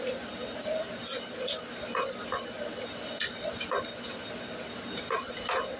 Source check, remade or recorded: recorded